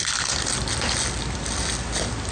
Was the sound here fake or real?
real